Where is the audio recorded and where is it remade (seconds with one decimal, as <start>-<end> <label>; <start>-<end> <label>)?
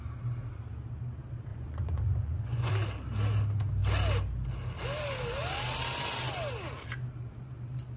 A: 0.0-1.5 recorded; 1.5-2.7 remade; 2.7-8.0 recorded